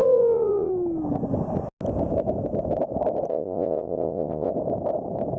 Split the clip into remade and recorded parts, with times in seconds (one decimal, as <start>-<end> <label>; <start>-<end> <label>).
0.0-0.7 remade; 0.7-3.3 recorded; 3.3-4.5 remade; 4.5-5.4 recorded